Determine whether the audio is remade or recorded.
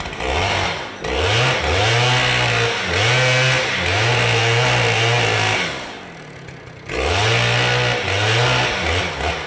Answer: recorded